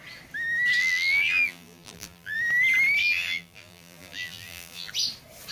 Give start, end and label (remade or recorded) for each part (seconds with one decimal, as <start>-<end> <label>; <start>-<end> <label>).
0.0-0.8 recorded; 0.8-2.4 remade; 2.4-3.0 recorded; 3.0-4.9 remade; 4.9-5.5 recorded